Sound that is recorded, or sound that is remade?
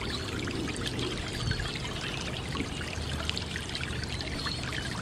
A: recorded